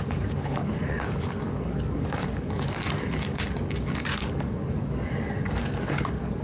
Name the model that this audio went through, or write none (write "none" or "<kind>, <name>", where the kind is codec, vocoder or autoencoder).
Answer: codec, DAC